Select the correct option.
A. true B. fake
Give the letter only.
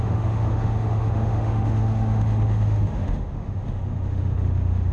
B